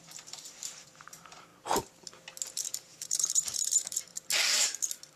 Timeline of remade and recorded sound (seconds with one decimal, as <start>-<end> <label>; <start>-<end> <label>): 0.0-1.5 remade; 1.5-2.5 recorded; 2.5-4.1 remade; 4.1-5.2 recorded